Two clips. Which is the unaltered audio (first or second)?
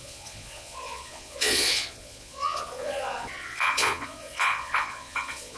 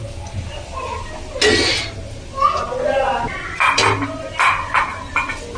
second